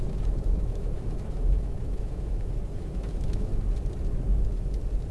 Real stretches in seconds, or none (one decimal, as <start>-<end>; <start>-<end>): 3.5-5.1